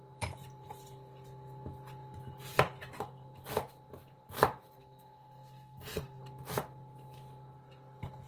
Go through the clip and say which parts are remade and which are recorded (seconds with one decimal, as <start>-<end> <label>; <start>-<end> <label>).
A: 0.0-4.8 recorded; 4.8-6.2 remade; 6.2-8.3 recorded